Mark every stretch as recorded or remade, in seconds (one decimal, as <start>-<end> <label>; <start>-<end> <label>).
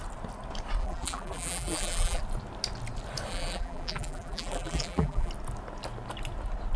0.0-0.8 recorded; 0.8-2.2 remade; 2.2-3.3 recorded; 3.3-5.3 remade; 5.3-6.8 recorded